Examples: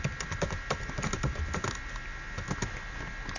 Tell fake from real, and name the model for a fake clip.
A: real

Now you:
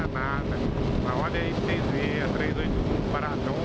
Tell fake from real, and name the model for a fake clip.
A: real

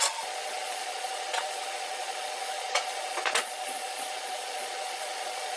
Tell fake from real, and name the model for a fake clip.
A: fake, vocoder, Vocos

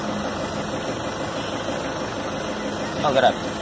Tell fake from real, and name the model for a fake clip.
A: real